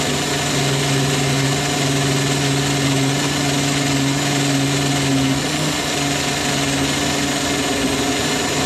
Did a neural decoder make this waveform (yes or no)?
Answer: no